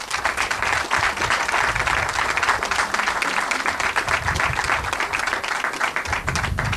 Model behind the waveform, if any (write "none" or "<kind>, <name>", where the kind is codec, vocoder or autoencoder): none